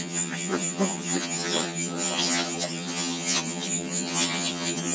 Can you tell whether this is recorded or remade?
remade